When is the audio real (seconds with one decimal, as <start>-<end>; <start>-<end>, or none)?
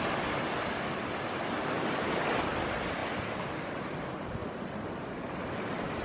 0.0-6.0